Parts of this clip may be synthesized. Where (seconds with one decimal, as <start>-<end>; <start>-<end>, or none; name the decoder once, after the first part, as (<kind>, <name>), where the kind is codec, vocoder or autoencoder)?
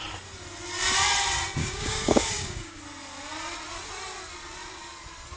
1.6-2.8 (codec, DAC)